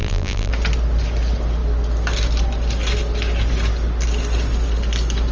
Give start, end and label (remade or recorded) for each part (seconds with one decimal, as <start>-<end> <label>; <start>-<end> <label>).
0.0-0.5 remade; 0.5-5.3 recorded